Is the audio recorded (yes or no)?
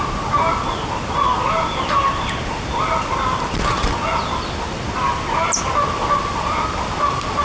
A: yes